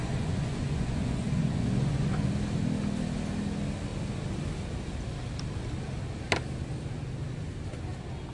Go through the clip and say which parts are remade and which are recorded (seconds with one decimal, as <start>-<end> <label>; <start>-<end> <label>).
0.0-2.3 remade; 2.3-8.3 recorded

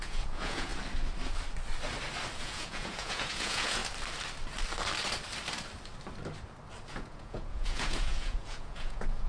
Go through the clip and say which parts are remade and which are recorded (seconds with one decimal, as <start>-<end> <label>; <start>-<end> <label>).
0.0-0.7 remade; 0.7-2.4 recorded; 2.4-3.8 remade; 3.8-6.9 recorded; 6.9-9.3 remade